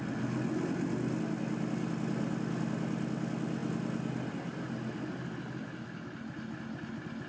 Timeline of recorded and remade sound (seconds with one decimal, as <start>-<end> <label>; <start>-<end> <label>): 0.0-7.3 recorded